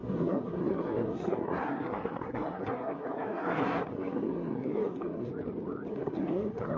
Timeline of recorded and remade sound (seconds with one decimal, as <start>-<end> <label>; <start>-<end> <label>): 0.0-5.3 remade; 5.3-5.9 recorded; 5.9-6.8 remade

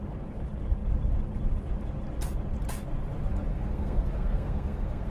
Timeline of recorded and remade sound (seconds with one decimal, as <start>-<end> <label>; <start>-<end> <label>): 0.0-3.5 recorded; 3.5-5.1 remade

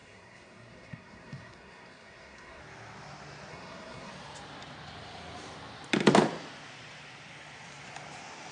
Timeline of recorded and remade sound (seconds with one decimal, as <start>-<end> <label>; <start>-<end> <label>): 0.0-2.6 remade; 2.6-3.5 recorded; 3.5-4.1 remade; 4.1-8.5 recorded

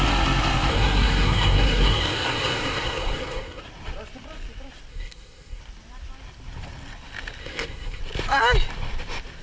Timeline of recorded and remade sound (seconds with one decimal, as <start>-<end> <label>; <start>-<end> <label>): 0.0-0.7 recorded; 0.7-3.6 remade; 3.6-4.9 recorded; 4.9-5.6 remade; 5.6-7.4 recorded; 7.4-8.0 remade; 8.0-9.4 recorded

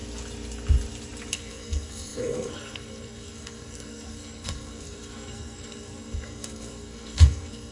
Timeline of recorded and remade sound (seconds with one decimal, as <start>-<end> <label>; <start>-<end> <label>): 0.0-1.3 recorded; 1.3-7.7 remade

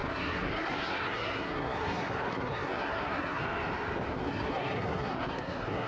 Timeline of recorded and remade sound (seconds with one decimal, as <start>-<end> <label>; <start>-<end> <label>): 0.0-3.4 remade; 3.4-4.1 recorded; 4.1-5.9 remade

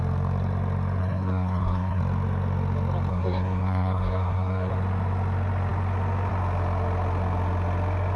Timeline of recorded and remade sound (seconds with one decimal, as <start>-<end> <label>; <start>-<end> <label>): 0.0-1.0 recorded; 1.0-2.0 remade; 2.0-3.1 recorded; 3.1-4.7 remade; 4.7-8.2 recorded